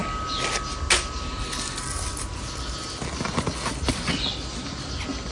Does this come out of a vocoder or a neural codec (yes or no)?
no